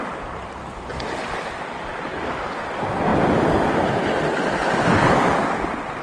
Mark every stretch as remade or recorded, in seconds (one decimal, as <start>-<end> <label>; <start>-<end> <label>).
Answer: 0.0-6.0 recorded